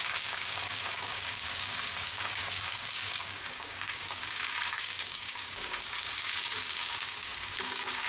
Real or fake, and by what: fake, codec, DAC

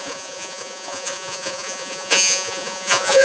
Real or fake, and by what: fake, vocoder, Vocos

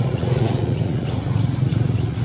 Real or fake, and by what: fake, vocoder, Vocos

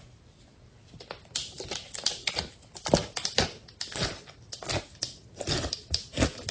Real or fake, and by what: real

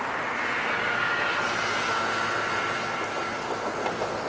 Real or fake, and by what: real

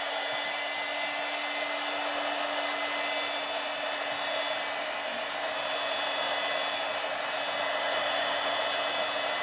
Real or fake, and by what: real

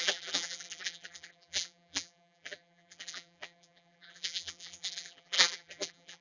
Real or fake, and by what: fake, vocoder, BigVGAN v2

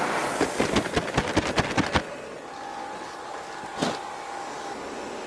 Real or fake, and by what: real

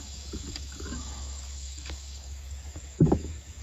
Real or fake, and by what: fake, codec, DAC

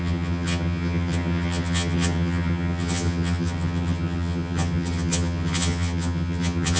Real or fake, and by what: fake, vocoder, HiFi-GAN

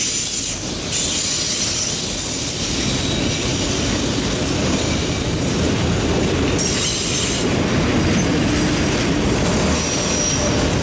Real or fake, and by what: real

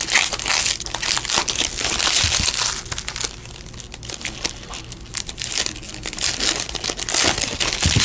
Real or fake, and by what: real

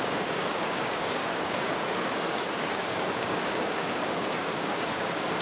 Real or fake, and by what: fake, codec, DAC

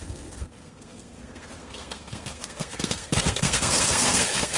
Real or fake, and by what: fake, codec, SNAC